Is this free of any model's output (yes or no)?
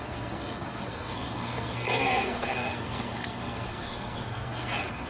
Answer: no